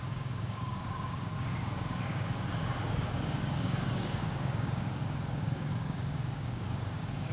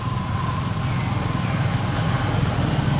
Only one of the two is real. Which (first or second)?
second